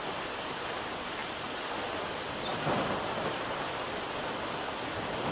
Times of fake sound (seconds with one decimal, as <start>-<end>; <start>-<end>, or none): none